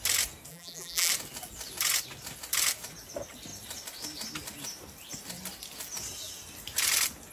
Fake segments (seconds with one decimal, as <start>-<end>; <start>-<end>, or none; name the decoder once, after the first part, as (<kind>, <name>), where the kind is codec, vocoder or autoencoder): 0.5-1.1 (vocoder, BigVGAN v2)

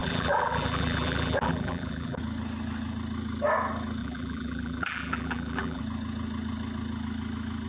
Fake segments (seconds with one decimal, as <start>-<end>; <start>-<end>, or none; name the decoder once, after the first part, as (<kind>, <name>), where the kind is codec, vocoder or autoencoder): 0.0-2.2 (vocoder, BigVGAN v2); 4.0-5.8

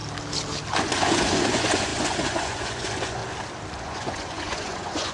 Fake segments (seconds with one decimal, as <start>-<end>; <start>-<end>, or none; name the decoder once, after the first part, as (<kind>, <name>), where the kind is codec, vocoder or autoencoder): 0.8-3.2 (vocoder, Vocos); 3.8-5.1

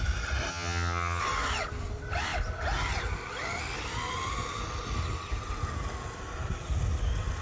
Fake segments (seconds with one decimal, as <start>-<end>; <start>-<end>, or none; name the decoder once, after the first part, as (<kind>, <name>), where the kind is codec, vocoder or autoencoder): 0.5-1.2 (vocoder, HiFi-GAN)

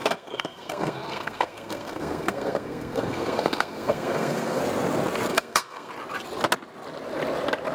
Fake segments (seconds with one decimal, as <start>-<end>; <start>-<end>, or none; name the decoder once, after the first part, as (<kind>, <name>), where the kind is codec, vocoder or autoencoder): 0.0-4.6 (codec, SNAC); 5.3-5.9

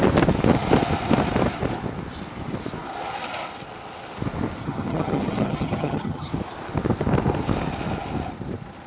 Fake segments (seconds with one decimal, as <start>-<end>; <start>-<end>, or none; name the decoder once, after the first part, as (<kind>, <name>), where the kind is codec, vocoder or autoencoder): 4.6-6.3 (vocoder, HiFi-GAN)

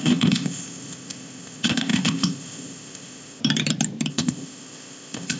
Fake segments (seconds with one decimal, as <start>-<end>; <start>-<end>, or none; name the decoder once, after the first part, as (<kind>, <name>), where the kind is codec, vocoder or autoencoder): 0.0-3.4 (codec, ZipCodec); 4.1-5.4

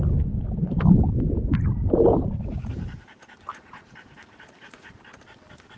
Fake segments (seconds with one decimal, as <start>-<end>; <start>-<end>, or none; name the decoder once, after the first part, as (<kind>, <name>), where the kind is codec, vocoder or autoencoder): 3.5-5.0 (vocoder, Vocos)